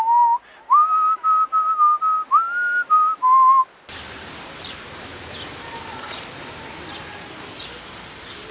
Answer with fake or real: real